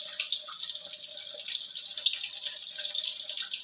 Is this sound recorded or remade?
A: recorded